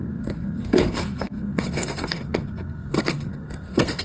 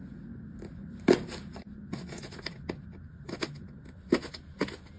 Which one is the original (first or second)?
second